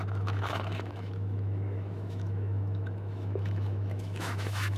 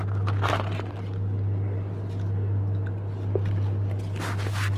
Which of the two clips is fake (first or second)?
first